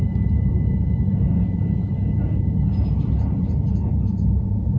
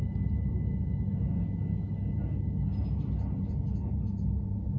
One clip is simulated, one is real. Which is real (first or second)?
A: second